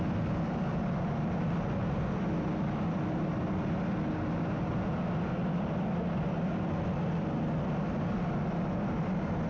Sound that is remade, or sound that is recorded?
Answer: recorded